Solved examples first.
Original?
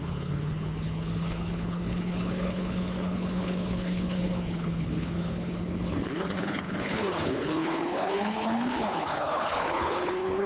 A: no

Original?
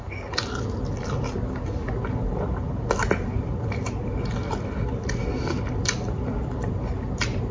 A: yes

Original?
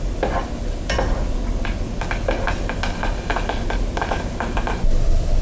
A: yes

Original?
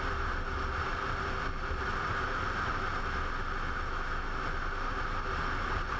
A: yes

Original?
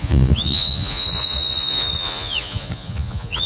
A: no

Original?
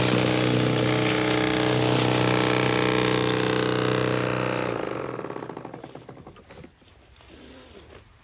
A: yes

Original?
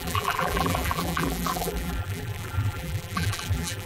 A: no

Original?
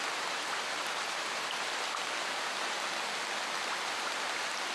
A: yes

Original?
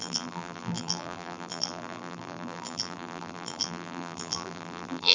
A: no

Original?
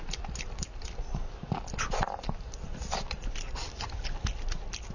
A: yes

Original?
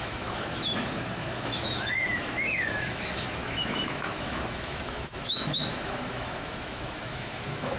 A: no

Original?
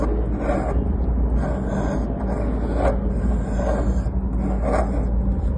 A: yes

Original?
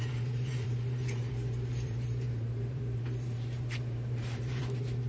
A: no